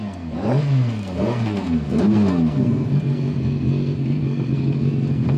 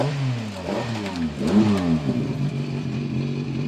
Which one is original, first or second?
second